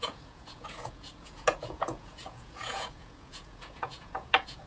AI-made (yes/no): yes